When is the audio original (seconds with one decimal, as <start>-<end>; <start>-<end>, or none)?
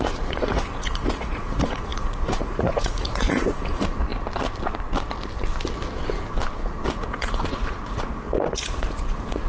4.1-6.6